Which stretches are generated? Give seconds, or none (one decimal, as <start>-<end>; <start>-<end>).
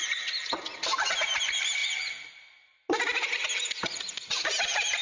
none